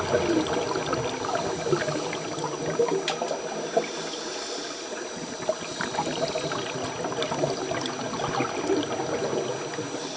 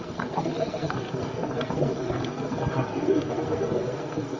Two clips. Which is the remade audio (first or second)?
second